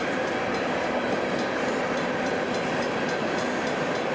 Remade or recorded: remade